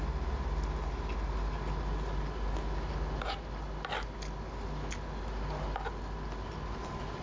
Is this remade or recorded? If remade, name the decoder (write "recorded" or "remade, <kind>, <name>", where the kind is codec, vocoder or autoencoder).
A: recorded